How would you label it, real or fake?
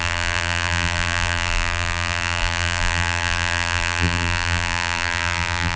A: fake